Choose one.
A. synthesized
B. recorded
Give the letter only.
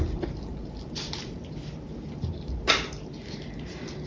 B